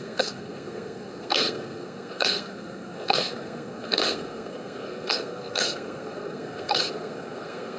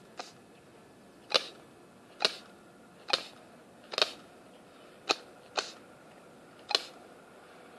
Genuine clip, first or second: second